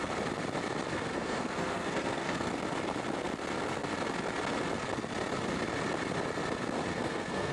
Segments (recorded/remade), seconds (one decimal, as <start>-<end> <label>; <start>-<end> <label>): 0.0-0.9 recorded; 0.9-2.5 remade; 2.5-6.9 recorded; 6.9-7.5 remade